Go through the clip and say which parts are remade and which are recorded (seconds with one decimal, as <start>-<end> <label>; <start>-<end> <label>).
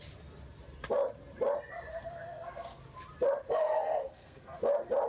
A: 0.0-1.9 recorded; 1.9-2.8 remade; 2.8-4.0 recorded; 4.0-4.6 remade; 4.6-5.1 recorded